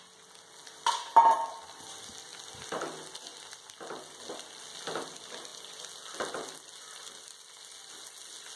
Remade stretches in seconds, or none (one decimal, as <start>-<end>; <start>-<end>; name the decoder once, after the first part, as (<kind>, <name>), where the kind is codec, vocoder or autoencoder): none